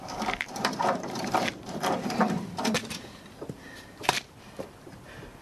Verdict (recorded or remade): remade